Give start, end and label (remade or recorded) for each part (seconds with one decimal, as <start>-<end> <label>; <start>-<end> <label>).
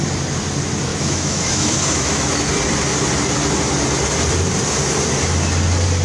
0.0-0.9 recorded; 0.9-2.5 remade; 2.5-6.0 recorded